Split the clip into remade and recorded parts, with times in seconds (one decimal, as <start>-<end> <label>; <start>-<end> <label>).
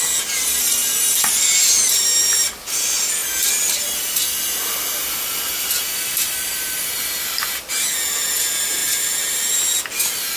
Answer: 0.0-8.8 recorded; 8.8-9.8 remade; 9.8-10.4 recorded